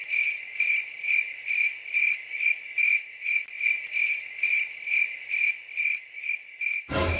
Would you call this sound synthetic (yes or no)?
no